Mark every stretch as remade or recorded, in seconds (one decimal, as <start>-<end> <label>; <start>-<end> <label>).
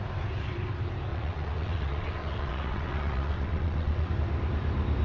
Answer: 0.0-1.1 recorded; 1.1-4.1 remade; 4.1-5.0 recorded